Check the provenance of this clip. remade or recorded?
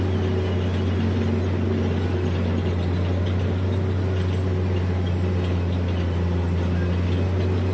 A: recorded